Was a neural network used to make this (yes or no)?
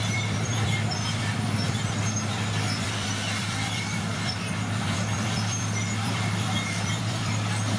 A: yes